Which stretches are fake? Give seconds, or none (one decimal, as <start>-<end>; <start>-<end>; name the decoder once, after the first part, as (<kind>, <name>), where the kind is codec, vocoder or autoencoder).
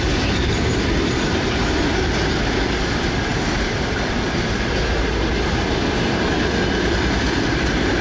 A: 0.0-3.3 (vocoder, BigVGAN v2); 7.4-8.0